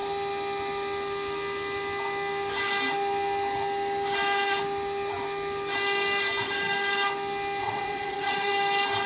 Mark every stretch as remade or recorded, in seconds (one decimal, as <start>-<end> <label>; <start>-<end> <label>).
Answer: 0.0-7.6 recorded; 7.6-8.5 remade; 8.5-9.1 recorded